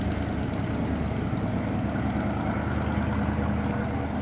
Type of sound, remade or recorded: recorded